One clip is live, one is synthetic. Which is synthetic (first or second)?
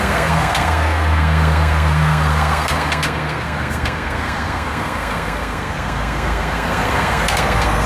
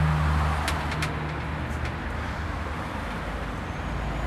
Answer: first